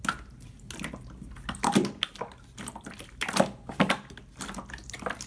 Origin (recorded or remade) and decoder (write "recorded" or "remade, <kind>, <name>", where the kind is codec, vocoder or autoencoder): recorded